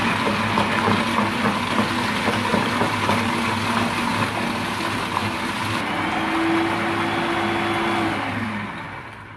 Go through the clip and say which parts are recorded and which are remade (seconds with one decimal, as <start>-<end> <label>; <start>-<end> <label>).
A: 0.0-9.4 recorded